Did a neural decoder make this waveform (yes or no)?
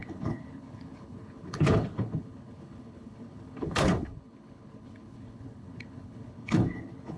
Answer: yes